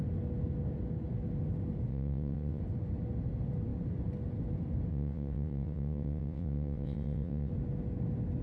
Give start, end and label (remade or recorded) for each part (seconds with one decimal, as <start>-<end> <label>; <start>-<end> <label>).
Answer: 0.0-1.9 recorded; 1.9-2.6 remade; 2.6-4.9 recorded; 4.9-7.5 remade; 7.5-8.4 recorded